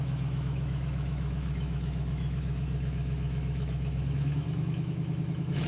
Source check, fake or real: fake